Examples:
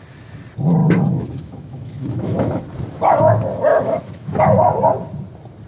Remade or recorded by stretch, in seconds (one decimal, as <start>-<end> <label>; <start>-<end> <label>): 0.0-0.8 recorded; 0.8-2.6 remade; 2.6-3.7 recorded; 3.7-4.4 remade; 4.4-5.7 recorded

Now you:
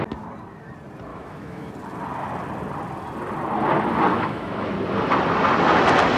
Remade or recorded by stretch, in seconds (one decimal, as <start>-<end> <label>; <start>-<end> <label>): 0.0-1.1 recorded; 1.1-1.7 remade; 1.7-4.1 recorded; 4.1-4.7 remade; 4.7-6.2 recorded

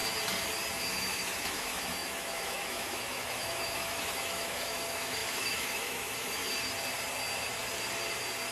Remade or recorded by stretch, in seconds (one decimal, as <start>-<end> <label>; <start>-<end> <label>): 0.0-0.9 recorded; 0.9-6.4 remade; 6.4-8.5 recorded